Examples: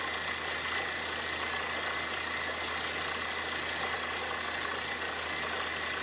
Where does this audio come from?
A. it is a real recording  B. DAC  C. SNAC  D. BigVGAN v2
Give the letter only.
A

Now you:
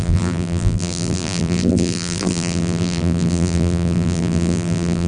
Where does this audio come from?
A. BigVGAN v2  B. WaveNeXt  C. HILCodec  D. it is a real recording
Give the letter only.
A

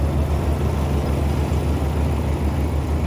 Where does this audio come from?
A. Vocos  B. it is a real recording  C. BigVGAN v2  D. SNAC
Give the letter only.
B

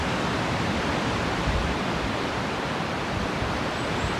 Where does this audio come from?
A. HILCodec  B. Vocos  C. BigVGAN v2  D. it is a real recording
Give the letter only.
C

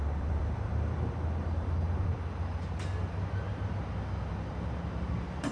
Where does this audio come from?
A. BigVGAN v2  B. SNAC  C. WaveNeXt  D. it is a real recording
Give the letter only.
A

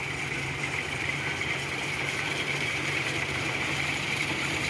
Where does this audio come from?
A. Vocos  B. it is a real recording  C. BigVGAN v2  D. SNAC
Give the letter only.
C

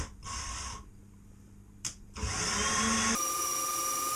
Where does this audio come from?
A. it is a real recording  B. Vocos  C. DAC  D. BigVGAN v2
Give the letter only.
D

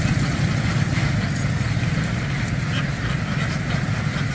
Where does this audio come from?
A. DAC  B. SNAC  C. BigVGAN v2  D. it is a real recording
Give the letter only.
D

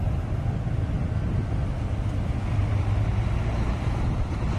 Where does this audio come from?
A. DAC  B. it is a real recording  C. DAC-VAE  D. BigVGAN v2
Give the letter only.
B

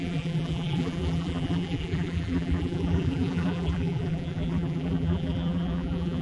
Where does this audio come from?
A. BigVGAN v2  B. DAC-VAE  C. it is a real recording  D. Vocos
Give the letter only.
A